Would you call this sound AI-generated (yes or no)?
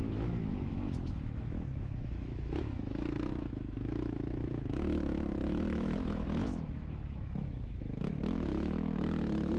yes